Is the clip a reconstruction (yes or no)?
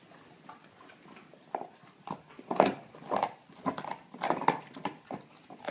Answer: no